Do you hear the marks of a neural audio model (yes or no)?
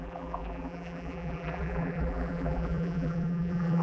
yes